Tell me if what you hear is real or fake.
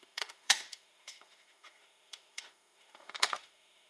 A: fake